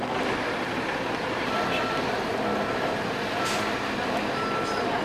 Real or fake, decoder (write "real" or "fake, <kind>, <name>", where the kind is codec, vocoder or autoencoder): real